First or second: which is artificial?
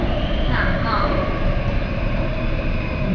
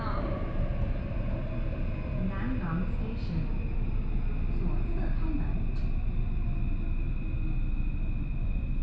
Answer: first